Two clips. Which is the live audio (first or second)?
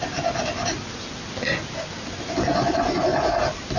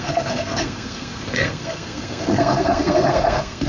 first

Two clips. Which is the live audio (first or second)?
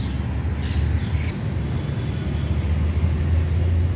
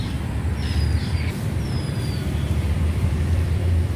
first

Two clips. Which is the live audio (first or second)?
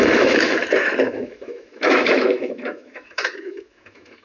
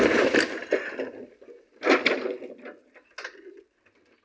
second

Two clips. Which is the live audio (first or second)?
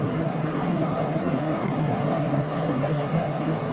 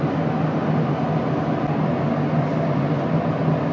second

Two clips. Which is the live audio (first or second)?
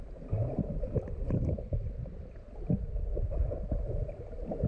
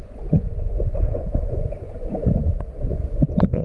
first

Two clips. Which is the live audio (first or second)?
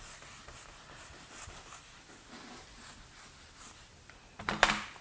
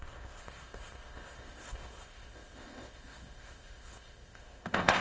first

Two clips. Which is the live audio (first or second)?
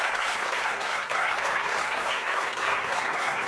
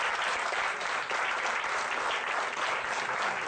second